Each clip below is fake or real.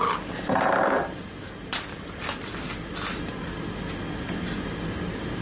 real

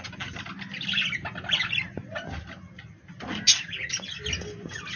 real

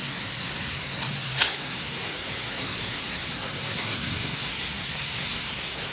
fake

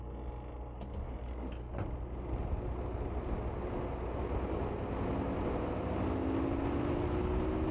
real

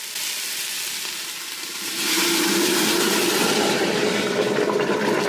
real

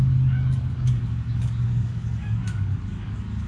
fake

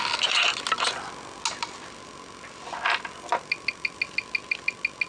real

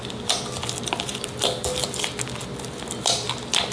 real